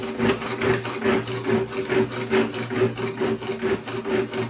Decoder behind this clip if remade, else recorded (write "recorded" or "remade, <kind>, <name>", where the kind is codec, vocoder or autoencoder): recorded